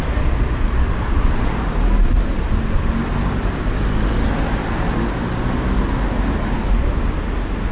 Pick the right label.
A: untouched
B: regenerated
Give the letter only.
A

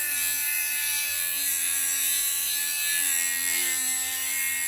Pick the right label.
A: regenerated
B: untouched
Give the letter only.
A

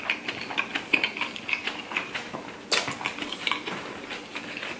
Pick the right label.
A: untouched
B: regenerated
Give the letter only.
A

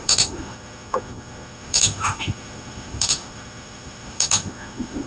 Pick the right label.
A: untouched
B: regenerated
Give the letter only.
B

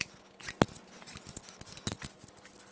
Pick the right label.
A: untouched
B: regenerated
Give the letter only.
A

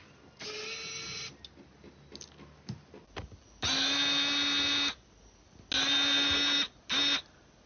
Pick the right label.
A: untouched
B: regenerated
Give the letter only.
A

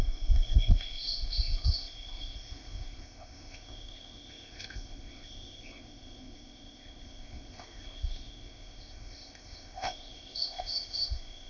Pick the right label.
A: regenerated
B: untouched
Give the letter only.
A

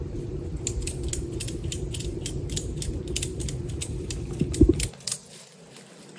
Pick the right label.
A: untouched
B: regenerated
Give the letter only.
A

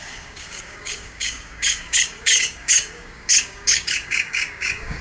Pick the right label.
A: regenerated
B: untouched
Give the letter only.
A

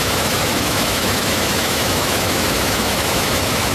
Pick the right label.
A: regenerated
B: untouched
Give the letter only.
A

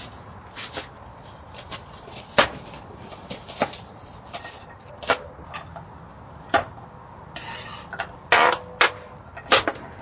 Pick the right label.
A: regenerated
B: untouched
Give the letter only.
B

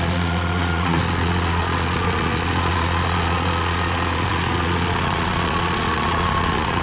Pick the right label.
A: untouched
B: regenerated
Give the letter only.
B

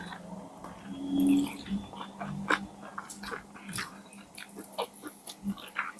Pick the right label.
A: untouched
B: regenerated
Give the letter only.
A